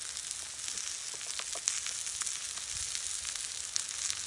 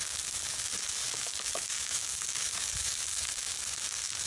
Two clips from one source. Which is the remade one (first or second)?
second